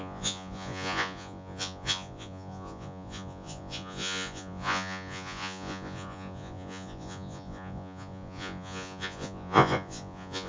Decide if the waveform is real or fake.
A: fake